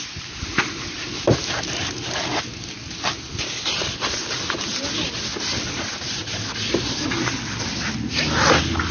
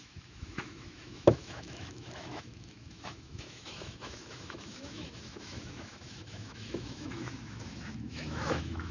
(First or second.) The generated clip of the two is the second